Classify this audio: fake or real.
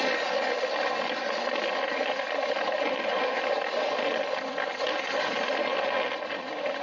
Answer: real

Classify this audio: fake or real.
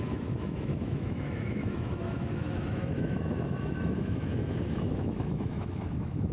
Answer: fake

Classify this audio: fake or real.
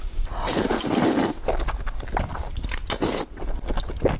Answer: real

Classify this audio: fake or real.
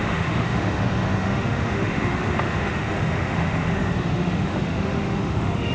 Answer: fake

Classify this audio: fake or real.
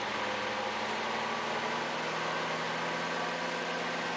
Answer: real